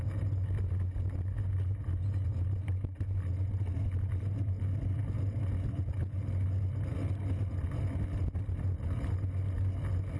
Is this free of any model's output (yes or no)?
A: yes